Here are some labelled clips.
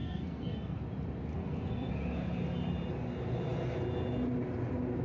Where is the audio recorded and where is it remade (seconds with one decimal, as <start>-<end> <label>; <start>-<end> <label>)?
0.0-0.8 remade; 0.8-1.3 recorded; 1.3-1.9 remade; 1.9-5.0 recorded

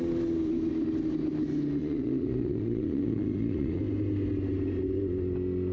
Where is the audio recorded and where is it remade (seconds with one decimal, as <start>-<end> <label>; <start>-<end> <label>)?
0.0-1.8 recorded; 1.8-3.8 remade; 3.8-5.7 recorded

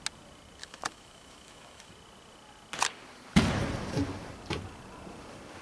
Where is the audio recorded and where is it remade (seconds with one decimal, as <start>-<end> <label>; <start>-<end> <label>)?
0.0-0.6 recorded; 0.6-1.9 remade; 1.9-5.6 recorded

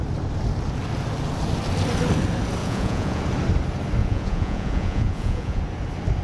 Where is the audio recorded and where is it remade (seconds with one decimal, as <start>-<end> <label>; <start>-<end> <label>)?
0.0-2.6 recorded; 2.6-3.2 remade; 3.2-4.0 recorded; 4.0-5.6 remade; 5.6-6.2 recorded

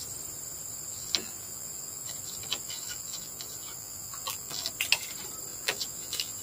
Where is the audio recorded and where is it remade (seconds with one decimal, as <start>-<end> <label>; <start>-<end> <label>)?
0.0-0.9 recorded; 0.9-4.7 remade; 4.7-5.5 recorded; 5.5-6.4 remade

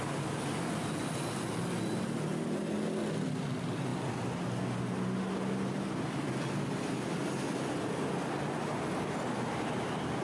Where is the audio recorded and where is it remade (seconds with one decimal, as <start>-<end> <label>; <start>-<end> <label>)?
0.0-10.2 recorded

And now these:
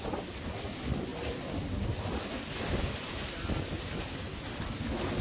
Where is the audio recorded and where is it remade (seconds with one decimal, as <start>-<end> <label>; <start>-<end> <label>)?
0.0-5.2 recorded